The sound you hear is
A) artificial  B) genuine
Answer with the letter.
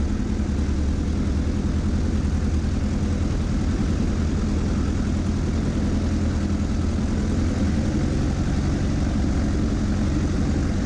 B